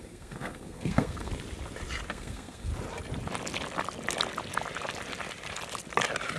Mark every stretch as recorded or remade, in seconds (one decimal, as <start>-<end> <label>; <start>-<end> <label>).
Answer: 0.0-1.3 remade; 1.3-2.1 recorded; 2.1-2.7 remade; 2.7-6.4 recorded